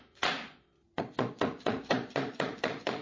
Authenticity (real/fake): fake